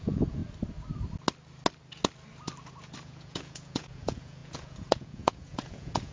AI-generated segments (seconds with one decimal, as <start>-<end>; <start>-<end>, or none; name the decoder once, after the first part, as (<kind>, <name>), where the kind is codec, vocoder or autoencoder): 0.0-0.4 (vocoder, Vocos); 3.0-6.1